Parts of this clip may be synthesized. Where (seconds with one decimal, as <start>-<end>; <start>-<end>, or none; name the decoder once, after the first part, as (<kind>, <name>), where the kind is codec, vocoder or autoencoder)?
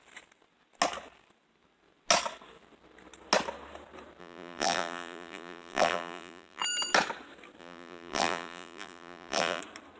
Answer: 4.2-6.6 (vocoder, BigVGAN v2); 7.6-9.6